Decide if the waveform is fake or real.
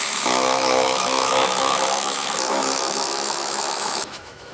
fake